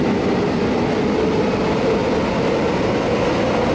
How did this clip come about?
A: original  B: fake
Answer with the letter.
A